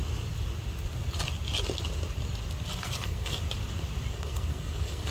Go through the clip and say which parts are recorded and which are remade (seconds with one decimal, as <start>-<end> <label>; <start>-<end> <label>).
0.0-2.8 recorded; 2.8-3.4 remade; 3.4-4.1 recorded; 4.1-5.1 remade